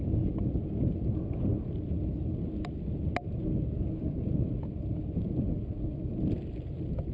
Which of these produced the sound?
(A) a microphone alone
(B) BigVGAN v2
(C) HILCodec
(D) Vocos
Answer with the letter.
A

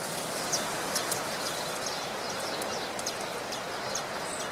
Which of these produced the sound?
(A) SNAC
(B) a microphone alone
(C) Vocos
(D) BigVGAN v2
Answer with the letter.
B